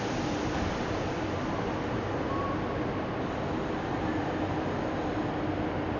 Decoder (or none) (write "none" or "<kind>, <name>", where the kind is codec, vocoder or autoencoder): none